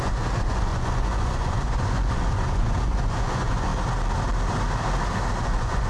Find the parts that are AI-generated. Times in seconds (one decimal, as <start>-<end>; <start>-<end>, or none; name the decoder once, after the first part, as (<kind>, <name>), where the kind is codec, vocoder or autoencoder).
0.0-3.7 (vocoder, Vocos); 5.4-5.9